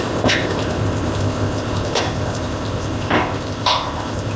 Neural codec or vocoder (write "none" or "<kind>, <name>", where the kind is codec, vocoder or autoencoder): codec, ZipCodec